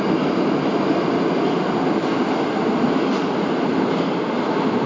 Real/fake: real